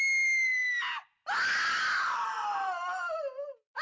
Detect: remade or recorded recorded